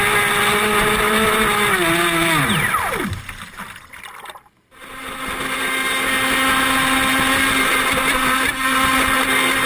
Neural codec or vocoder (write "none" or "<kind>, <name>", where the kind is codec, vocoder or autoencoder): none